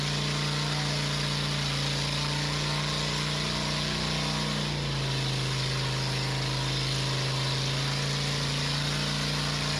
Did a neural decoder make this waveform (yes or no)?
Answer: no